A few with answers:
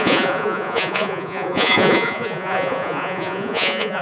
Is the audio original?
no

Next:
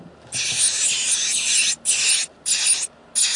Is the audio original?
yes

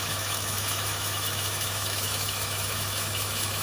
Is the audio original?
no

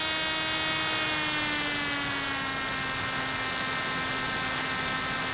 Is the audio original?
yes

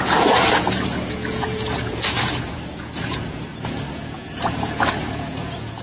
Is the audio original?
no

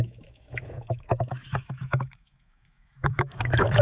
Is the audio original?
no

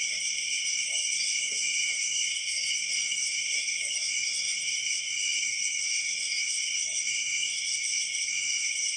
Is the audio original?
no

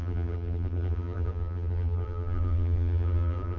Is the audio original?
no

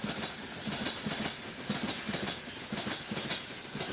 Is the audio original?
yes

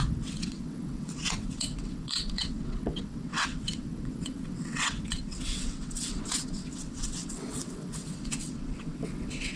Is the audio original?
no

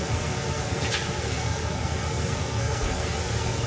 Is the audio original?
no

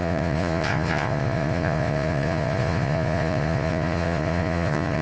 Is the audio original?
no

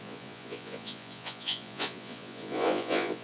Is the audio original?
no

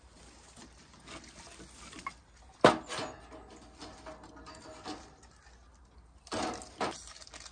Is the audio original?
yes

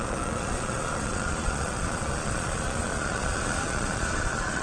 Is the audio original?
no